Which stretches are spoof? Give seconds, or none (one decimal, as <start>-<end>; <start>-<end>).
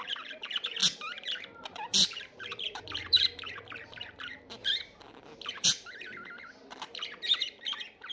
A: 0.0-8.1